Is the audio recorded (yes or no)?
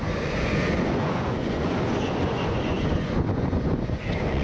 no